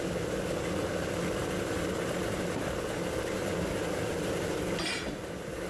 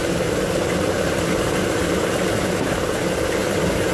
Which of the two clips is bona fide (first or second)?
first